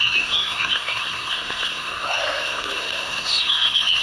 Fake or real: fake